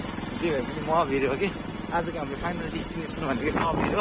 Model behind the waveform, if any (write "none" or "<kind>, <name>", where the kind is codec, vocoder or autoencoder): none